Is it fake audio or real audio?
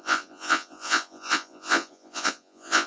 fake